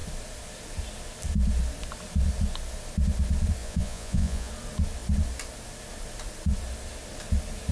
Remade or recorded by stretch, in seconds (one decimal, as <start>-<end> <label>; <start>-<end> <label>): 0.0-3.6 recorded; 3.6-4.5 remade; 4.5-7.7 recorded